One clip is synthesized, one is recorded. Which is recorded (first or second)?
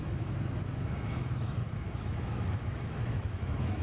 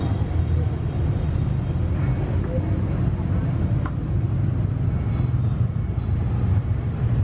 second